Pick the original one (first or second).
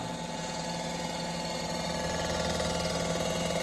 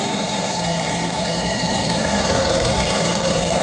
first